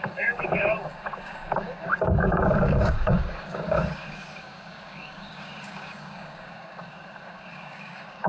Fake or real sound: fake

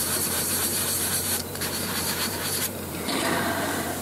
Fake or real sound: fake